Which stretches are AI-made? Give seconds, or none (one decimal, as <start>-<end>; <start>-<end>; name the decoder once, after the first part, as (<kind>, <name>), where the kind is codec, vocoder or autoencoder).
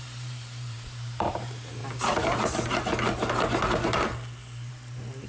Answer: 0.0-1.8 (vocoder, BigVGAN v2); 4.7-5.3